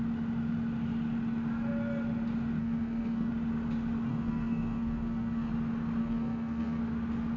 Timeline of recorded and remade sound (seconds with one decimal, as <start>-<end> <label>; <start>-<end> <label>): 0.0-2.6 recorded; 2.6-3.3 remade; 3.3-4.1 recorded; 4.1-5.5 remade; 5.5-6.0 recorded; 6.0-6.8 remade; 6.8-7.4 recorded